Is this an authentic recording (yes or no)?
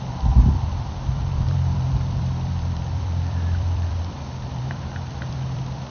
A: no